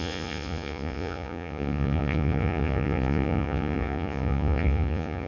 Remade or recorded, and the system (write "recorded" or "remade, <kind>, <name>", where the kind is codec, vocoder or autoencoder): remade, vocoder, Vocos